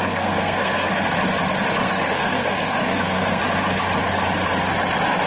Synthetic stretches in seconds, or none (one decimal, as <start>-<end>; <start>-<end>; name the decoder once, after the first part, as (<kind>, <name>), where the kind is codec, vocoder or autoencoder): 0.0-0.9 (codec, SNAC); 1.8-3.4